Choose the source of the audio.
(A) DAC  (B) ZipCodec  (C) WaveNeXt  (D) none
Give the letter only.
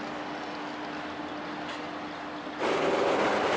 D